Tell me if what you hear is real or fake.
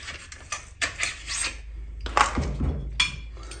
real